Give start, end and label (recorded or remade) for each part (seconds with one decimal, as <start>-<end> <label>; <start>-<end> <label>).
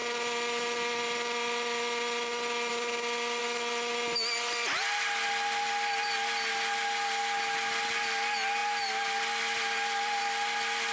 0.0-10.9 recorded